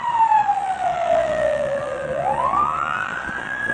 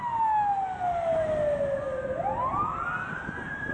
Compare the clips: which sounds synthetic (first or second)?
first